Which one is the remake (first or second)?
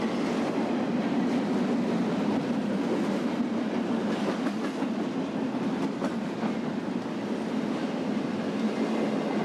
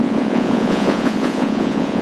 second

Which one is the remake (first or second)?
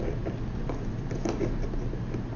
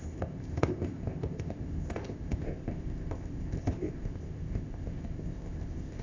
second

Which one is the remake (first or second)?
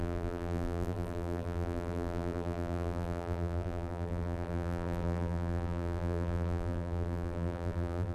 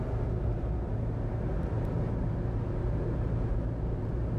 first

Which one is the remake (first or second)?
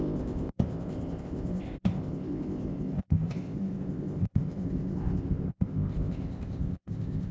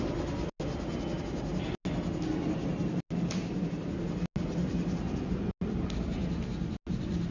first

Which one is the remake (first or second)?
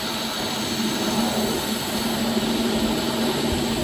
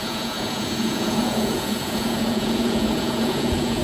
second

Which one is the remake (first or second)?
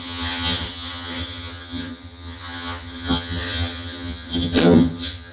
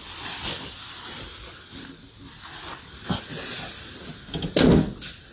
first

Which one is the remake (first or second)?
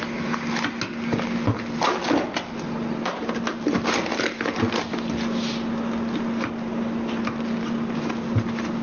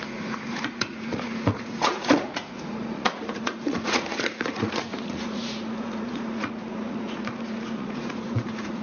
second